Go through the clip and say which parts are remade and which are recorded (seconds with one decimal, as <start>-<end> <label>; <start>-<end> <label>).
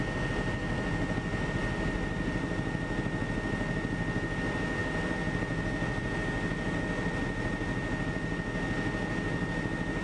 0.0-10.0 recorded